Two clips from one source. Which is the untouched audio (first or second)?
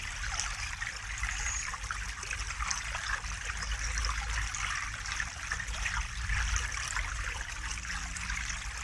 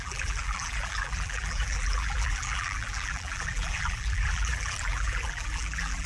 first